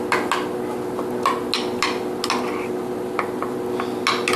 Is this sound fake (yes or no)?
no